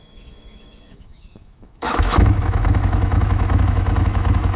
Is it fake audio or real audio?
fake